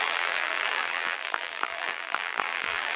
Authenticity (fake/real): fake